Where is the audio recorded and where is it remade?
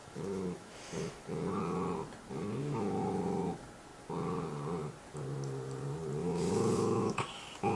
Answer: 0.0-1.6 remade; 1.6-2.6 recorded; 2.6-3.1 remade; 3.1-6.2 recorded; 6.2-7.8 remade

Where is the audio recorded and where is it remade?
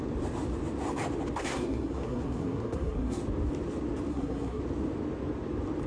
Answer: 0.0-1.4 recorded; 1.4-3.2 remade; 3.2-4.1 recorded; 4.1-4.6 remade; 4.6-5.9 recorded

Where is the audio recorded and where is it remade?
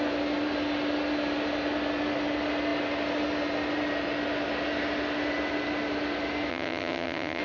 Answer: 0.0-6.5 recorded; 6.5-7.4 remade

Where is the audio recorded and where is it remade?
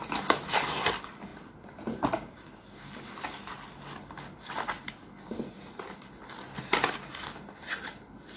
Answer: 0.0-8.4 recorded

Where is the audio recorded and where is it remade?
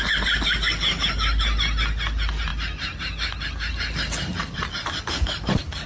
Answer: 0.0-5.9 recorded